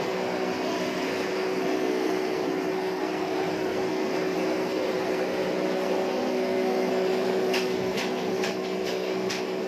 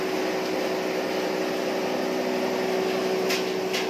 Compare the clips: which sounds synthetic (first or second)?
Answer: first